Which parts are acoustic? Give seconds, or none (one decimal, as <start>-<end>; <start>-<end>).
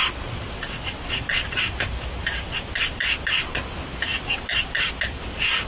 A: 0.0-5.7